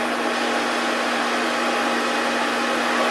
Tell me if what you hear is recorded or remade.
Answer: recorded